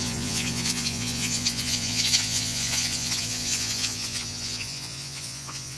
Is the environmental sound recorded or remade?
remade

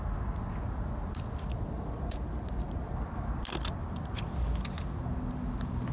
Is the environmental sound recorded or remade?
recorded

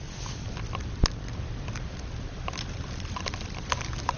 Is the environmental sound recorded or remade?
recorded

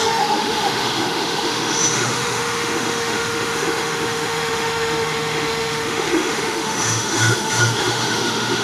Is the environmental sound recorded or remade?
remade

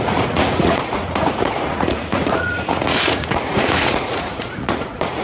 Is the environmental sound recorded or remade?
remade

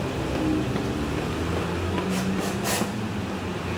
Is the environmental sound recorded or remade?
recorded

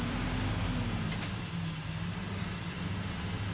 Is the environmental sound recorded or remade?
recorded